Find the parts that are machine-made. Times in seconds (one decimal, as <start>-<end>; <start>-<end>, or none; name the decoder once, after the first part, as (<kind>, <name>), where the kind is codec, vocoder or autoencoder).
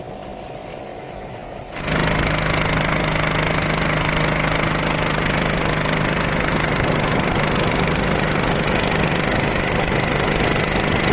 none